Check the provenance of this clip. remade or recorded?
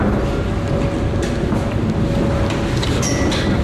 recorded